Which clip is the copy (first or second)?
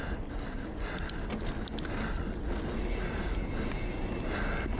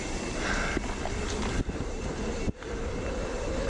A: second